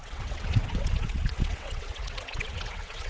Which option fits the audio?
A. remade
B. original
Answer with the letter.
A